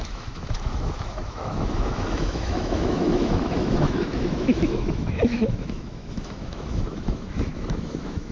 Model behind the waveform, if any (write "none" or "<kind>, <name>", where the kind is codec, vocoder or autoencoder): autoencoder, DAC-VAE